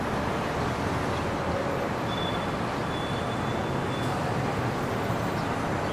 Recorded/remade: recorded